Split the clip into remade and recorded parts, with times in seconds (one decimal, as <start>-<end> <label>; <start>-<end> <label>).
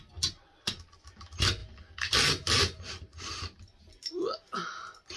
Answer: 0.0-5.2 recorded